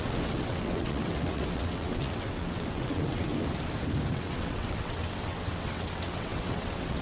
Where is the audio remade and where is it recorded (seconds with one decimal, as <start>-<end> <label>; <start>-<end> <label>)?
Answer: 0.0-3.3 remade; 3.3-4.1 recorded; 4.1-7.0 remade